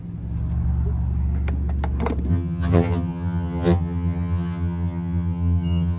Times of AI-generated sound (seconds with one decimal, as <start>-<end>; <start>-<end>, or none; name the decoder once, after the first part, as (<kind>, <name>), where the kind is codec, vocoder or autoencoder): 2.3-6.0 (vocoder, HiFi-GAN)